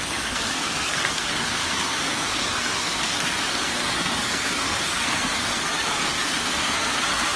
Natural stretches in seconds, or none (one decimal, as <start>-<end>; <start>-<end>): none